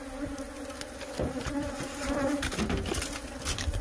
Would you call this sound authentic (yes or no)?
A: yes